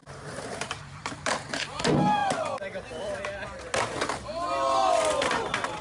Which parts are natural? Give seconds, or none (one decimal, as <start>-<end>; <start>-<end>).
1.3-5.8